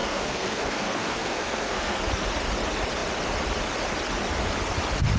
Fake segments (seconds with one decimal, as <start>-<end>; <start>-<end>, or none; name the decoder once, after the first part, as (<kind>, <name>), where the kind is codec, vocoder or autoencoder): 0.0-2.0 (codec, SNAC)